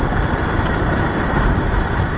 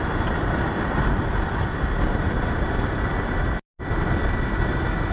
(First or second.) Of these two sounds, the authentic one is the second